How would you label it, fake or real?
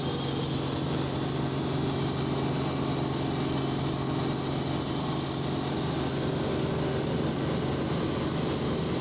real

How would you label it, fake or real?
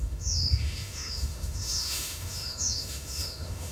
fake